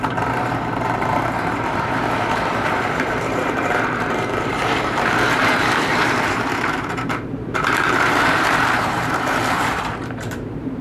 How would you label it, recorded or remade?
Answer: remade